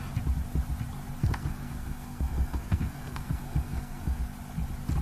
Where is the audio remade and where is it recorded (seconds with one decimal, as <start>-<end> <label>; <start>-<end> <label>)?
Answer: 0.0-1.2 recorded; 1.2-4.2 remade; 4.2-5.0 recorded